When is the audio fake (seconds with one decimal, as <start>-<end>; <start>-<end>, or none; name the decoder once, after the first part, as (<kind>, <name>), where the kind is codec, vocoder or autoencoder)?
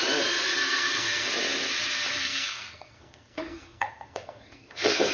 0.6-1.3 (codec, SNAC); 2.1-5.1